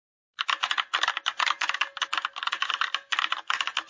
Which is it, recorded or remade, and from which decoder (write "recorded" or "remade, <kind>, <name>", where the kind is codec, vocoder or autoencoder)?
recorded